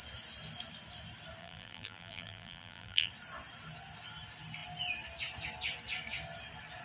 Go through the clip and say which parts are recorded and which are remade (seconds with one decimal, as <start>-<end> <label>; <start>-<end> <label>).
0.0-1.4 recorded; 1.4-3.1 remade; 3.1-6.8 recorded